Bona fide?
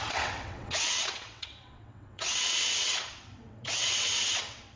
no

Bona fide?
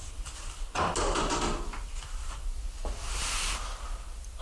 yes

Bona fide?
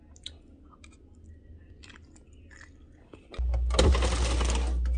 yes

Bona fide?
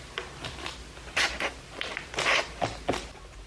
no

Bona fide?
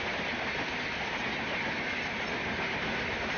yes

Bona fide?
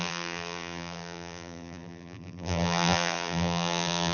no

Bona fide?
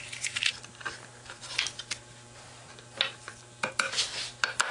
no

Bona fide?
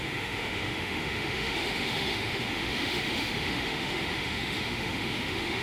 no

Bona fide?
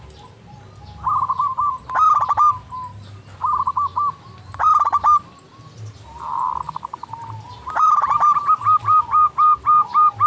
yes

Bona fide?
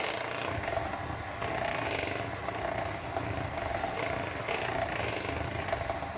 yes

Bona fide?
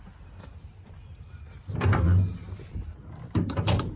yes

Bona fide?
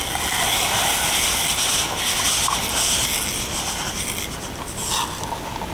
yes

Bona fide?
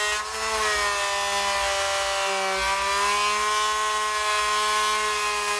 yes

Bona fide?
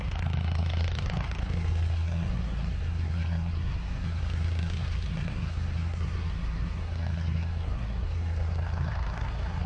no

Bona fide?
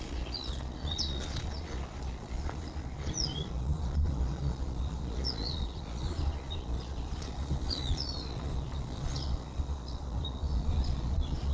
no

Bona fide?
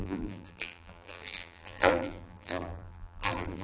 no